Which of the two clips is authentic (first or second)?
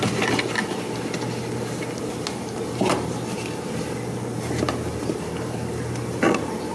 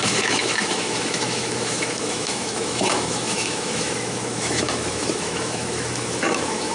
first